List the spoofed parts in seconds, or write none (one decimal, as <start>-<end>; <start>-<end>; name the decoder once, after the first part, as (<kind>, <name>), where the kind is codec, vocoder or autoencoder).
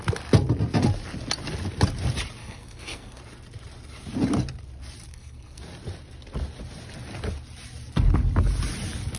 2.4-3.2 (codec, SNAC); 5.1-5.6